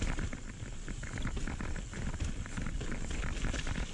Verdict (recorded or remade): remade